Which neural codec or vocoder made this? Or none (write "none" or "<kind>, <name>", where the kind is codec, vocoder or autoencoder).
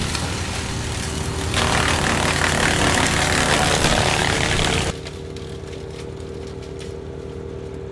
none